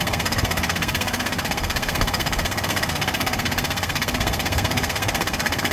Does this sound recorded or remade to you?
remade